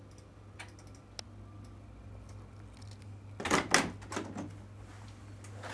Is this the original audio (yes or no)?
yes